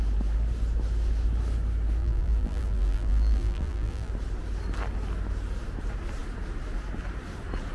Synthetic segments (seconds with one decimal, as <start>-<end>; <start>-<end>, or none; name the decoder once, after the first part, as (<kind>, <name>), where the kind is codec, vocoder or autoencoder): 2.0-4.1 (vocoder, BigVGAN v2)